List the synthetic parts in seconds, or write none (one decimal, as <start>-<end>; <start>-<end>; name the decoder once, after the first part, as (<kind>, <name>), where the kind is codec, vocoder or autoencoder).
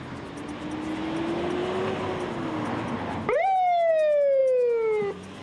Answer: none